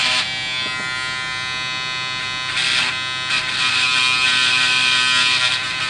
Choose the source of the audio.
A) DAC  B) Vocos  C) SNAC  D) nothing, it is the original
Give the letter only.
D